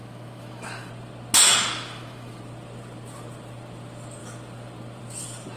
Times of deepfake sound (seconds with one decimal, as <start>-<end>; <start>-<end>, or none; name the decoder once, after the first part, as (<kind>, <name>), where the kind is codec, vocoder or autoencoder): 0.0-0.9 (autoencoder, DAC-VAE); 1.4-2.4